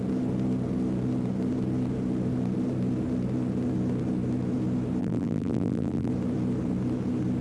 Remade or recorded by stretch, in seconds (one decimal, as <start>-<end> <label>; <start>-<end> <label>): 0.0-5.0 recorded; 5.0-6.1 remade; 6.1-7.4 recorded